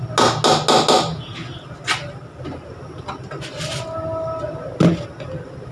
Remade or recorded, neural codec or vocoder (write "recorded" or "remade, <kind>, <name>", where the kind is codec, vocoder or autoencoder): recorded